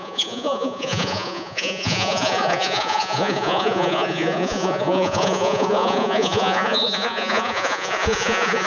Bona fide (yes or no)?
no